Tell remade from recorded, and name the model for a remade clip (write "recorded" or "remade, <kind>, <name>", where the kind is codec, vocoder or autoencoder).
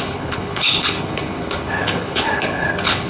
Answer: remade, codec, HILCodec